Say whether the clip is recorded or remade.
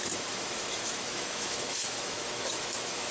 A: remade